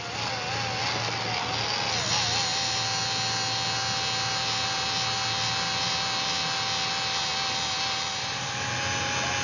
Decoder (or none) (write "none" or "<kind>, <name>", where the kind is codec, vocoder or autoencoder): none